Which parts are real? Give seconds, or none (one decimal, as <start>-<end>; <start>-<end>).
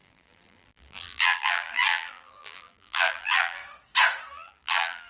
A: 3.6-4.3